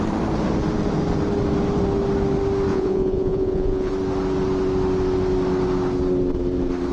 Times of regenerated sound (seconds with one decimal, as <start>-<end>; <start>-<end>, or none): 2.7-3.9